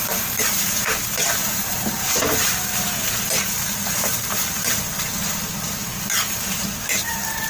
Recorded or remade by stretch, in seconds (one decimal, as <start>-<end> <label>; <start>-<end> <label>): 0.0-5.1 remade; 5.1-6.3 recorded; 6.3-7.5 remade